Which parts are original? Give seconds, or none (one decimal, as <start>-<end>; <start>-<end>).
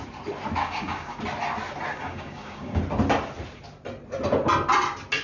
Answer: 0.0-0.6; 1.2-1.9; 2.8-5.2